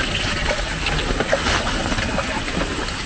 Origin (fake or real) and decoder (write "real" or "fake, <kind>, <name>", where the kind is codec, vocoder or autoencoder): real